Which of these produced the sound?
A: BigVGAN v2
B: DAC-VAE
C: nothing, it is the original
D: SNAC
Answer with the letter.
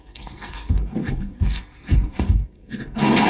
D